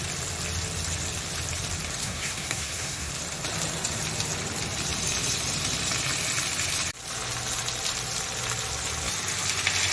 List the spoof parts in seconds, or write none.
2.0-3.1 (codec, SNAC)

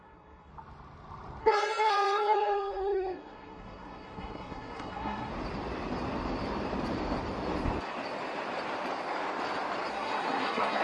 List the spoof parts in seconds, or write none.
0.0-0.5 (codec, SNAC); 1.4-5.3; 9.9-10.8